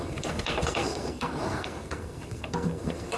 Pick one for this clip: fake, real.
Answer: fake